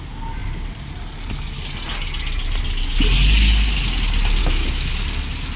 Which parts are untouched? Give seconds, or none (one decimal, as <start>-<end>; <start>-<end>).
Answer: 0.0-4.4; 4.9-5.6